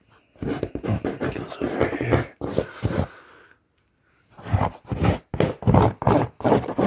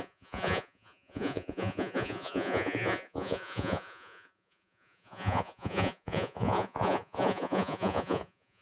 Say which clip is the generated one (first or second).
second